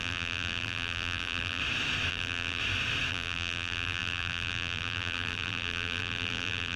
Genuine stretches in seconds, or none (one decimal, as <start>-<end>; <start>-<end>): 1.6-2.1; 2.6-3.1